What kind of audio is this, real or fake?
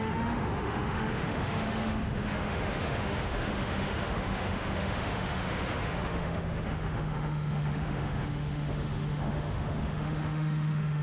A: fake